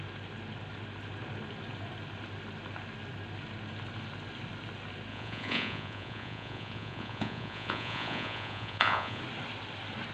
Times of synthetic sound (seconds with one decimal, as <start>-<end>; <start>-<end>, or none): 5.1-9.2